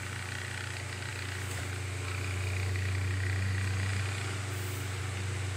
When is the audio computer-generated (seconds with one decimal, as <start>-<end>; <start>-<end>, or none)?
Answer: none